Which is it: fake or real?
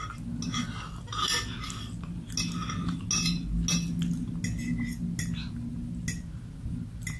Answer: real